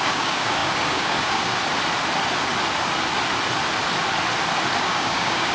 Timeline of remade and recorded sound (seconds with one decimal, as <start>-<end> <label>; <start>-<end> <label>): 0.0-1.6 remade; 1.6-4.8 recorded; 4.8-5.5 remade